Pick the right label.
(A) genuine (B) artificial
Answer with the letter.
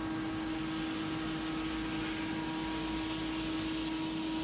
A